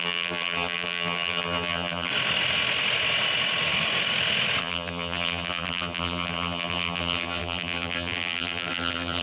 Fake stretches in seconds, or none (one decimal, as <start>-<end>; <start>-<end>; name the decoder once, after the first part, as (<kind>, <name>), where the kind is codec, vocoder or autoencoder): 0.0-2.1 (vocoder, BigVGAN v2); 4.6-9.2